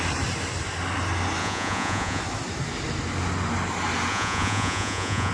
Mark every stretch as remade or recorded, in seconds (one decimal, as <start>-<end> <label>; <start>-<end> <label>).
0.0-1.4 recorded; 1.4-2.2 remade; 2.2-4.1 recorded; 4.1-5.3 remade